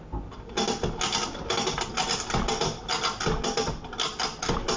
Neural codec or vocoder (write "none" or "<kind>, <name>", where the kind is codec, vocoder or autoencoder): none